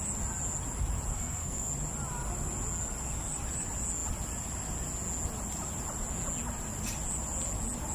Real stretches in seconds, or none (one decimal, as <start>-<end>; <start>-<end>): 0.0-1.1; 1.7-7.9